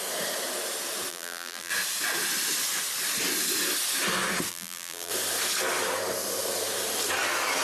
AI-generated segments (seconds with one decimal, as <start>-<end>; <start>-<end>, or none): 1.1-1.7; 4.5-5.1